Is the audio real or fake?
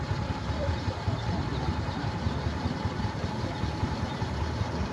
fake